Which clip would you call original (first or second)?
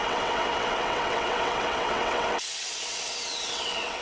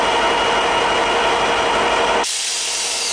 second